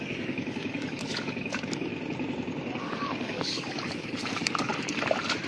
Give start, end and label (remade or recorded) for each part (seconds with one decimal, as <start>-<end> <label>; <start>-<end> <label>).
0.0-1.9 remade; 1.9-2.8 recorded; 2.8-4.7 remade; 4.7-5.5 recorded